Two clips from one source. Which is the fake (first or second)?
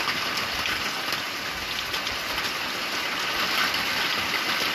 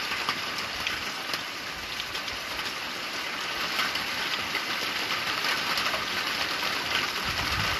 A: second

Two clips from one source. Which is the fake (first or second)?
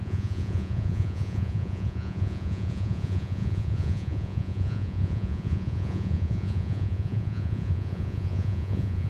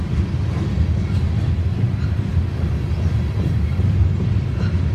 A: first